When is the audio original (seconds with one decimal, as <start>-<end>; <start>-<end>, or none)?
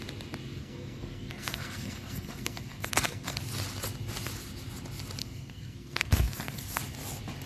0.0-0.6; 3.4-5.2; 6.8-7.5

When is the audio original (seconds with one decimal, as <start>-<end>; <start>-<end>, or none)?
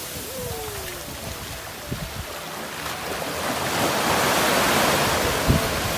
0.0-6.0